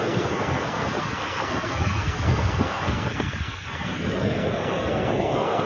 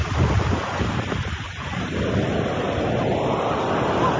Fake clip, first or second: first